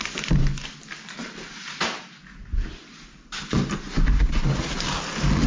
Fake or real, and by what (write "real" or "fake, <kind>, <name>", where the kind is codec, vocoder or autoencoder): real